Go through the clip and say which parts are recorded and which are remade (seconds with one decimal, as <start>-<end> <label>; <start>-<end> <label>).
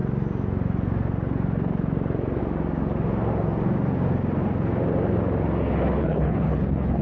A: 0.0-6.0 recorded; 6.0-7.0 remade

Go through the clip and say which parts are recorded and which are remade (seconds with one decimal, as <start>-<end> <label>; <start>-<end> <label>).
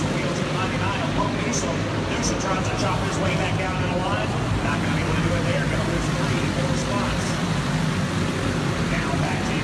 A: 0.0-1.5 recorded; 1.5-2.3 remade; 2.3-9.6 recorded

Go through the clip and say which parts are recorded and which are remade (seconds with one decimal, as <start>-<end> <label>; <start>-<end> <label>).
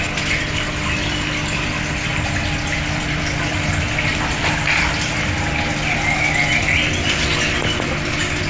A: 0.0-8.5 recorded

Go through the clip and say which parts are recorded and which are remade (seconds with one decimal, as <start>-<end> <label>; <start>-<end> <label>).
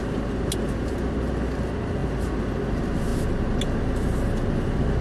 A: 0.0-5.0 recorded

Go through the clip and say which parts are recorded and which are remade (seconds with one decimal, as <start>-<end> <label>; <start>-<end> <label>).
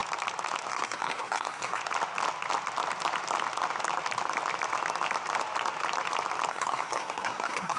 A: 0.0-0.7 recorded; 0.7-1.8 remade; 1.8-6.5 recorded; 6.5-7.8 remade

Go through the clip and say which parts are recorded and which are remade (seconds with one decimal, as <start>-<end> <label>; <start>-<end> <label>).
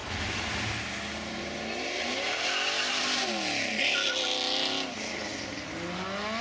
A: 0.0-6.4 recorded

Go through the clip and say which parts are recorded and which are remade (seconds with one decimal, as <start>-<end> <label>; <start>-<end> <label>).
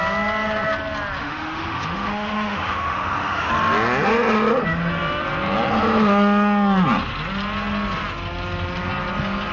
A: 0.0-1.2 recorded; 1.2-3.5 remade; 3.5-9.5 recorded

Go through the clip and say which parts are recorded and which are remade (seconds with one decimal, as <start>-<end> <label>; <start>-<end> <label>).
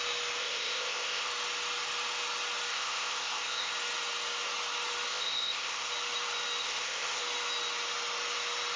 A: 0.0-0.4 recorded; 0.4-1.3 remade; 1.3-2.7 recorded; 2.7-3.7 remade; 3.7-5.1 recorded; 5.1-5.9 remade; 5.9-6.6 recorded; 6.6-7.2 remade; 7.2-8.8 recorded